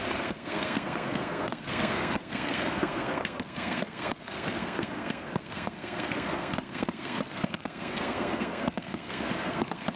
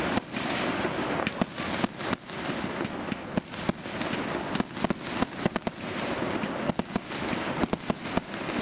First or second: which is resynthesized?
first